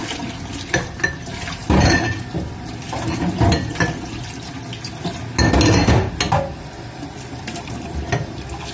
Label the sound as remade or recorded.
recorded